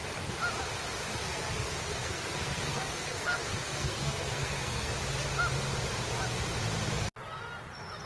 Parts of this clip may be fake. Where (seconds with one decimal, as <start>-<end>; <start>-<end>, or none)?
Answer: 1.2-4.9